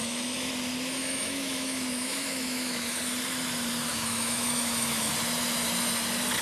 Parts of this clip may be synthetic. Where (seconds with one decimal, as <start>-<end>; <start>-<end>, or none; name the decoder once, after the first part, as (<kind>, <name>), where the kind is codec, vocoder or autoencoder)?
0.0-0.5 (autoencoder, DAC-VAE); 1.0-3.0; 3.9-5.1